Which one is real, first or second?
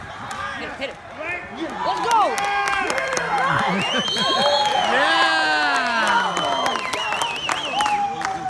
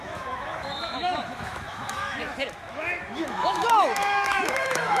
first